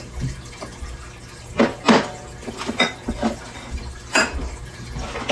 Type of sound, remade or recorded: recorded